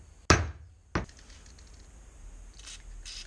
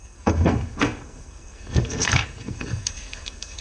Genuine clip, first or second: first